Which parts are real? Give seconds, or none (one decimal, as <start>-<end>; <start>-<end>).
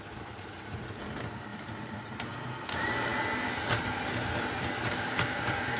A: 3.1-4.9